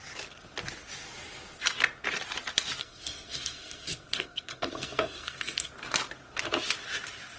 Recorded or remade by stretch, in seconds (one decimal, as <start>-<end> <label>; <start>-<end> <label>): 0.0-2.8 recorded; 2.8-5.7 remade; 5.7-7.4 recorded